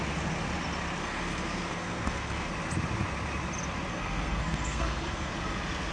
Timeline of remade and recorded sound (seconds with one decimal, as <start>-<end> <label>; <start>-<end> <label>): 0.0-1.0 recorded; 1.0-2.5 remade; 2.5-3.9 recorded; 3.9-5.3 remade; 5.3-5.9 recorded